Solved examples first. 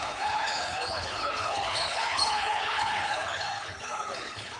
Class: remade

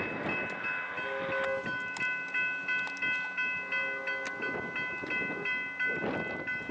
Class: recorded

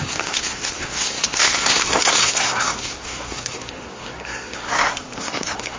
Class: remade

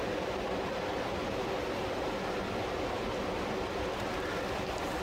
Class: recorded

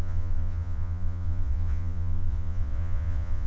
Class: remade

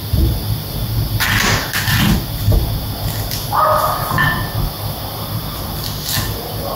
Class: recorded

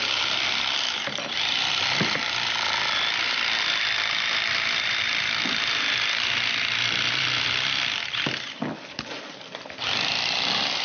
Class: remade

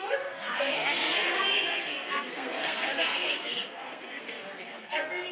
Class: remade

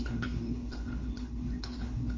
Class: remade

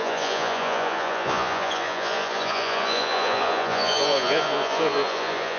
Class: remade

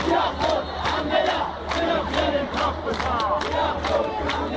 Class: recorded